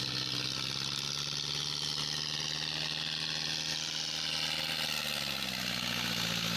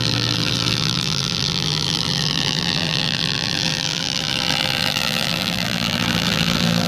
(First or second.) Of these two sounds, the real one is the first